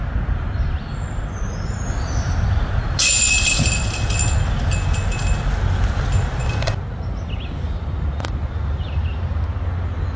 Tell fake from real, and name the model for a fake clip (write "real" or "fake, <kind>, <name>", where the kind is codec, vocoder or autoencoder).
real